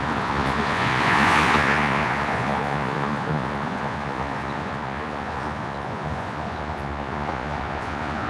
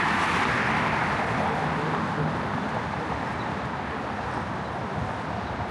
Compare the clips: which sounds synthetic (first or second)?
first